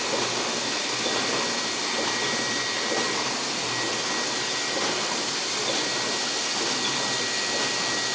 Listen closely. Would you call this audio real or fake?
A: real